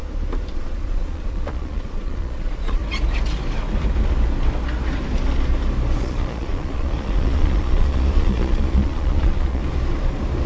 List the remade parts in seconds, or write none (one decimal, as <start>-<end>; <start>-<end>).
0.5-2.8; 6.0-9.6